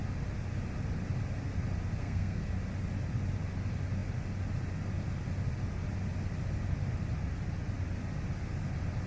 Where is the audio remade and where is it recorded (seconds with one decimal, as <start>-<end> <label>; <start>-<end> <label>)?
0.0-2.0 recorded; 2.0-2.5 remade; 2.5-9.1 recorded